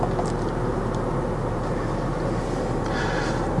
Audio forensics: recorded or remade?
recorded